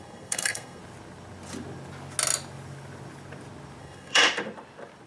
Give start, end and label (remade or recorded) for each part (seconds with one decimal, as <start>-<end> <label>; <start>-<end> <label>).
0.0-0.8 remade; 0.8-3.8 recorded; 3.8-4.2 remade; 4.2-5.1 recorded